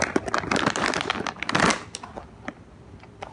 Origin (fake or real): fake